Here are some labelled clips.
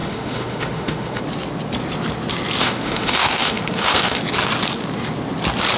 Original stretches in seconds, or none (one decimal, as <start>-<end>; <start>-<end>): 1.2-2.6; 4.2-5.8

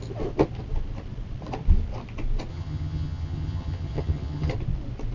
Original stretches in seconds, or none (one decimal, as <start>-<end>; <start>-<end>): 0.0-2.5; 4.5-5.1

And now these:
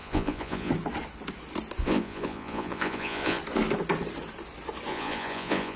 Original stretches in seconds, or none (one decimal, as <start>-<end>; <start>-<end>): 0.7-1.8; 3.4-4.9

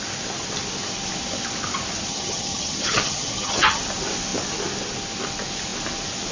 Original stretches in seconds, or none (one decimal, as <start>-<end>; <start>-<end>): 0.0-2.1; 3.8-6.3